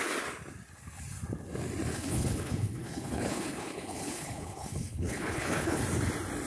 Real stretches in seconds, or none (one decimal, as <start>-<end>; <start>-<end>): 0.0-1.9; 5.8-6.5